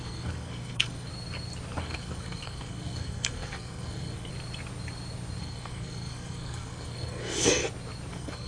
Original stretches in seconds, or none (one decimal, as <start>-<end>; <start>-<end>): 1.1-1.8; 4.3-5.4; 7.6-8.1